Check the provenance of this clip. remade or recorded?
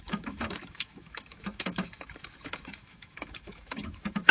remade